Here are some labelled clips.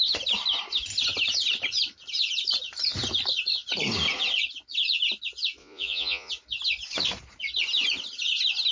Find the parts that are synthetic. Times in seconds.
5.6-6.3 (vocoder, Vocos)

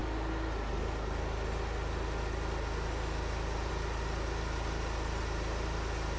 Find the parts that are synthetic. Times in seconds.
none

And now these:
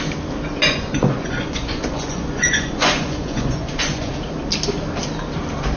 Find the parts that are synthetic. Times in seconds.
0.6-4.1 (vocoder, Vocos)

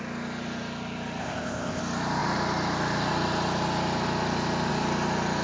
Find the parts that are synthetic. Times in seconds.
1.2-1.8 (codec, ZipCodec)

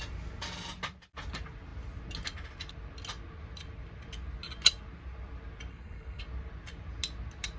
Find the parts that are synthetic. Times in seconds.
5.7-6.2 (codec, SNAC)

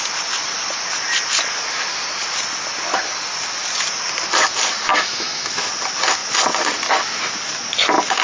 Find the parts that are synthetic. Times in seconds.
4.9-5.7 (autoencoder, DAC-VAE)

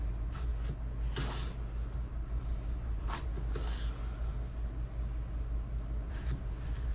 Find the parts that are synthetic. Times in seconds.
0.0-0.5 (vocoder, BigVGAN v2); 2.4-3.3; 6.1-6.9